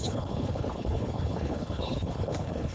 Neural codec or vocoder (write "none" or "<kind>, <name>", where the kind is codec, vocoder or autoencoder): codec, HILCodec